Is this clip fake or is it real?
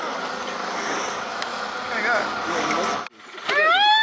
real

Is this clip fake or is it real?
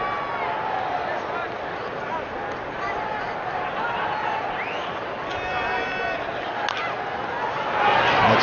real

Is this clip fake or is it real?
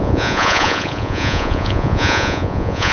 fake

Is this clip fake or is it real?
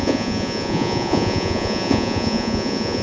fake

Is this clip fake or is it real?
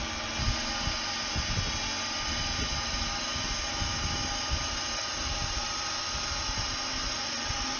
real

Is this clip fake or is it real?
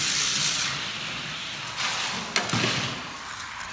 real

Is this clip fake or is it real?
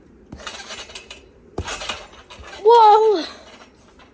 real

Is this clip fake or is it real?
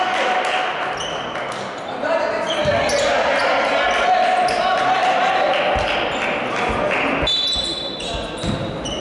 real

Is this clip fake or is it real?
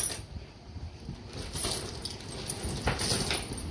real